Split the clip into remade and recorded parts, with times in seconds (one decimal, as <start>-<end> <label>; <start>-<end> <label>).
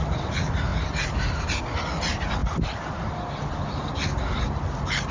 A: 0.0-0.7 recorded; 0.7-1.6 remade; 1.6-5.1 recorded